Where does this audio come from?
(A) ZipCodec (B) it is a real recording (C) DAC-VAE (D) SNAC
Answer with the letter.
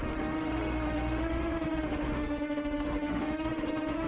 C